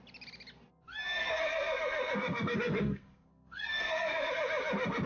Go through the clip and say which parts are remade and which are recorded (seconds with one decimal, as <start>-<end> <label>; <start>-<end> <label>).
0.0-1.2 recorded; 1.2-4.3 remade; 4.3-5.1 recorded